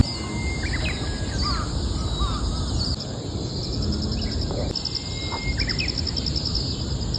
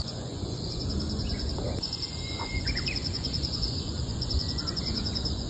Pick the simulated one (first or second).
second